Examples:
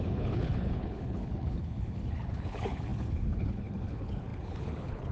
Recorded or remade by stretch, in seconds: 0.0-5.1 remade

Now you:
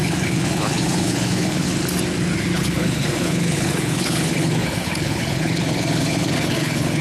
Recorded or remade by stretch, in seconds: 0.0-1.7 remade; 1.7-2.6 recorded; 2.6-7.0 remade